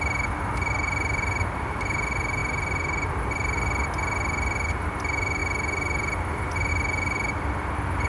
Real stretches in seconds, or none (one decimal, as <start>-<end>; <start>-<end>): 0.0-8.1